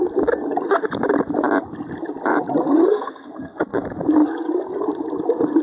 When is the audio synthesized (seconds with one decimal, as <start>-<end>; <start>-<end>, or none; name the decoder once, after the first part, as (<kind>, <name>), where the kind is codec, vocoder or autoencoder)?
2.8-3.6 (codec, SNAC)